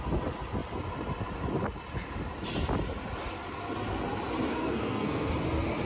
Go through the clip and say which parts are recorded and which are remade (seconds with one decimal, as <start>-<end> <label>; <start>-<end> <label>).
0.0-4.5 recorded; 4.5-5.3 remade; 5.3-5.9 recorded